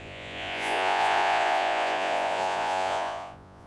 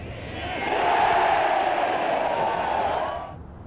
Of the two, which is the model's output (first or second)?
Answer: first